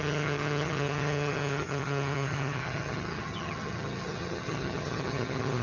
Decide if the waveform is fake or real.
fake